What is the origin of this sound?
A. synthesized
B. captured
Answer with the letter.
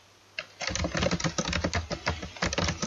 B